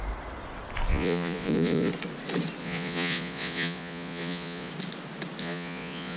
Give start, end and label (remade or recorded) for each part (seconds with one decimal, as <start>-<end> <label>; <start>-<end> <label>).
0.0-0.9 recorded; 0.9-1.9 remade; 1.9-2.6 recorded; 2.6-4.7 remade; 4.7-5.4 recorded; 5.4-6.2 remade

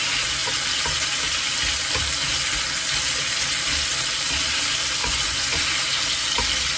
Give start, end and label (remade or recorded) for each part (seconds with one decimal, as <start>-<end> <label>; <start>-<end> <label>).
0.0-5.0 recorded; 5.0-5.6 remade; 5.6-6.8 recorded

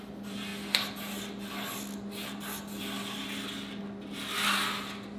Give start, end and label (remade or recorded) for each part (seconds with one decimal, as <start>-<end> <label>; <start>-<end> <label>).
0.0-5.2 recorded

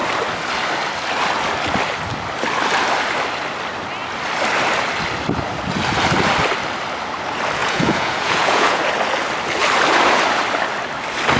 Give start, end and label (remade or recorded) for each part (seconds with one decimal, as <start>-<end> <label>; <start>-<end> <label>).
0.0-7.6 recorded; 7.6-8.8 remade; 8.8-11.4 recorded

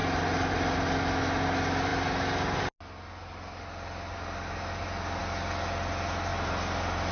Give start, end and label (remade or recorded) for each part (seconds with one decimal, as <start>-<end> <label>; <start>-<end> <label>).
0.0-7.1 recorded

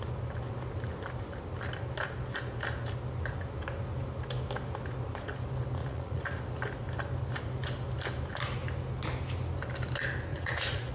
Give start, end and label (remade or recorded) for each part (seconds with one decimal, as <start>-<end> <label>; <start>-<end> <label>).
0.0-5.8 recorded; 5.8-6.4 remade; 6.4-10.3 recorded; 10.3-10.9 remade